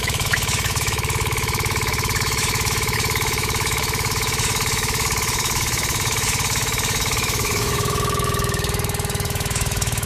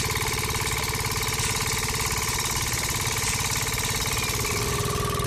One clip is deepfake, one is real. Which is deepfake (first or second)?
first